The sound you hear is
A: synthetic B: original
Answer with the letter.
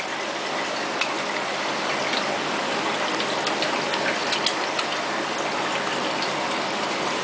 B